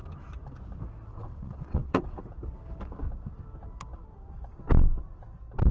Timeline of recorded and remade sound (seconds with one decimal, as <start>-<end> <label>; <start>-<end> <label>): 0.0-1.1 recorded; 1.1-2.2 remade; 2.2-5.7 recorded